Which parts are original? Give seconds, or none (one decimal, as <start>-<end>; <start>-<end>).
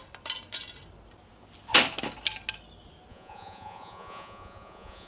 0.0-3.1